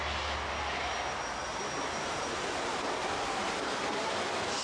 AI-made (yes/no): no